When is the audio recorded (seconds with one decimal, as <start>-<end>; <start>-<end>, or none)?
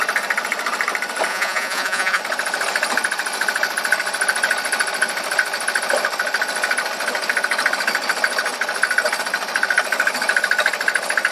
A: 0.0-1.3; 2.2-11.3